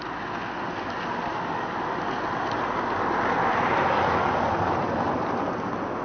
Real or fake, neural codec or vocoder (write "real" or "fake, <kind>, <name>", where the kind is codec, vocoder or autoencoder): real